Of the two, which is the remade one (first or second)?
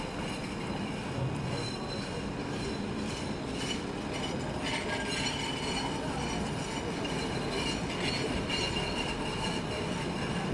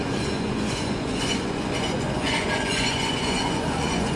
second